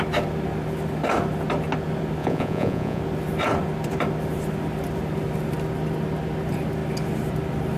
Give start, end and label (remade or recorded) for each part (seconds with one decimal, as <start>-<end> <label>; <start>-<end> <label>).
0.0-2.2 recorded; 2.2-3.0 remade; 3.0-7.8 recorded